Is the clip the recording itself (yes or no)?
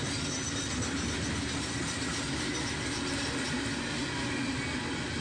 yes